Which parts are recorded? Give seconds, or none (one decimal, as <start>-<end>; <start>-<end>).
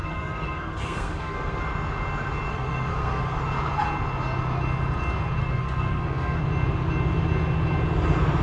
1.6-2.5; 3.4-5.4; 6.4-8.4